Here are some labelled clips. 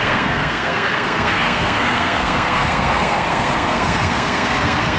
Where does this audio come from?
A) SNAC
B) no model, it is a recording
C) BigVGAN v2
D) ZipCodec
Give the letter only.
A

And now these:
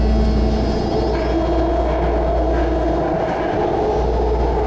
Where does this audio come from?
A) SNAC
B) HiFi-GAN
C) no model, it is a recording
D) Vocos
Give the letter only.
C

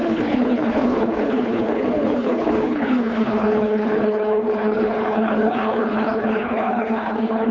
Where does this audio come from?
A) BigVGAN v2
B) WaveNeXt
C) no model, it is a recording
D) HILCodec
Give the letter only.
D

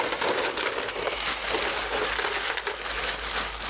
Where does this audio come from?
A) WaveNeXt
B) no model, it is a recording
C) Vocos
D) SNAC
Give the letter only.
B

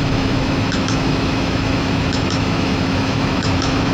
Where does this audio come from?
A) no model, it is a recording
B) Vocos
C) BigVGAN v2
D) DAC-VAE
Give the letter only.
D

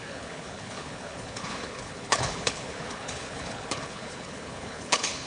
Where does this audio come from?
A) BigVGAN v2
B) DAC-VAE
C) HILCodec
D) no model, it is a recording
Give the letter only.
C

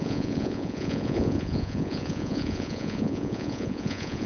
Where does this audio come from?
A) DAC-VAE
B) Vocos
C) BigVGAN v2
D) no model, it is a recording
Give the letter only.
B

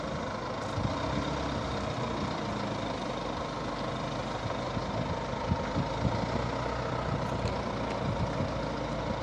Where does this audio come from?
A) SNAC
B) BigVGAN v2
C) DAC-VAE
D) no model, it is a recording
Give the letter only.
D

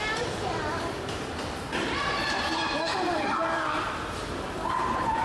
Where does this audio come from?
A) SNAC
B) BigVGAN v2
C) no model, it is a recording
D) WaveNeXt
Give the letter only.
B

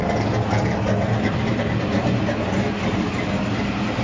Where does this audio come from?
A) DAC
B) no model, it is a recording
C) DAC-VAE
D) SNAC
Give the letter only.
B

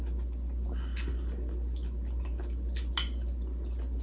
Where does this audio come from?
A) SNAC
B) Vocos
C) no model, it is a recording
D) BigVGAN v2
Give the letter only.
C